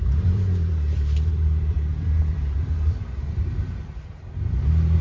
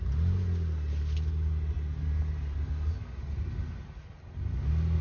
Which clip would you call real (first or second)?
second